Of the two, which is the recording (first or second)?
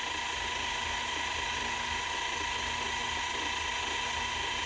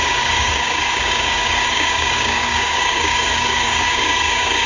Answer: first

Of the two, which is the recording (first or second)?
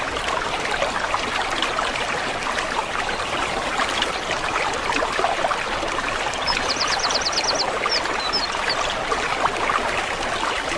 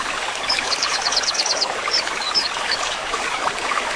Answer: first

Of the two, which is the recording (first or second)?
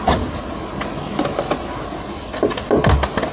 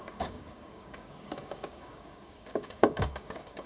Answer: first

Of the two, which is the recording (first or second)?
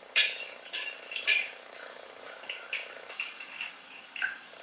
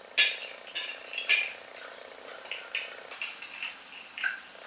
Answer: second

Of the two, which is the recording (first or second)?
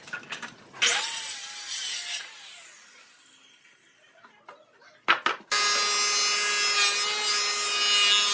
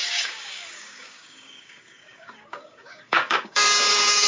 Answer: first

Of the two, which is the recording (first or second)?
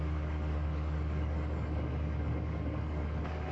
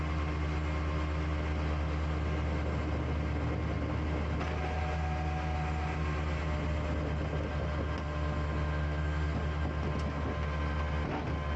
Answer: second